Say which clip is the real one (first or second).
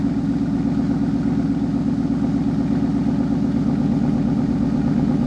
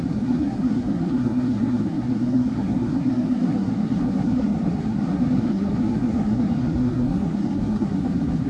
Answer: first